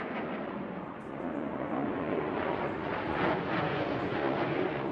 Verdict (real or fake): fake